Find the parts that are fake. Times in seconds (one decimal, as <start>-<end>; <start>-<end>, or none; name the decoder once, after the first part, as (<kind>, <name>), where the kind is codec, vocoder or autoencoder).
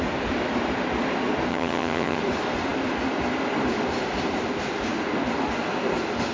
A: 1.5-2.2 (vocoder, HiFi-GAN)